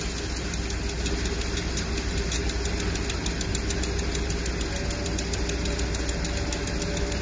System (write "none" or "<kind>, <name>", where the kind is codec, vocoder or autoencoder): none